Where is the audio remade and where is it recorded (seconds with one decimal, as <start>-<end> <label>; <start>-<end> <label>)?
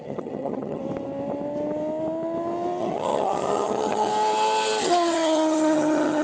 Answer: 0.0-0.8 remade; 0.8-2.8 recorded; 2.8-4.1 remade; 4.1-4.8 recorded; 4.8-6.2 remade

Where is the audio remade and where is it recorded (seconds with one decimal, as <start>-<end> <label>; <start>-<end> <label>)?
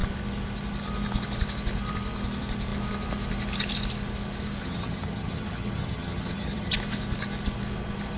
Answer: 0.0-4.6 recorded; 4.6-6.7 remade; 6.7-8.2 recorded